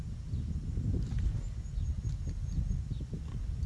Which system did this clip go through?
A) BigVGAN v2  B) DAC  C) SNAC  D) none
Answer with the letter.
D